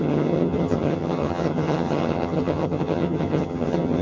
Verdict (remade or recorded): remade